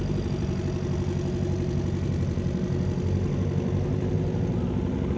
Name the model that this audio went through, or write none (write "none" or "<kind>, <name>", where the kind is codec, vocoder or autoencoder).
none